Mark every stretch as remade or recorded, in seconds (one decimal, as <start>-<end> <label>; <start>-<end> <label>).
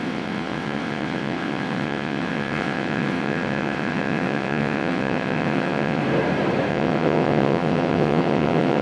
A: 0.0-6.0 remade; 6.0-6.7 recorded; 6.7-8.8 remade